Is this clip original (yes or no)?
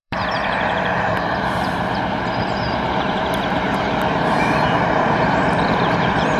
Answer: no